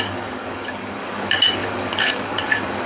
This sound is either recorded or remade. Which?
remade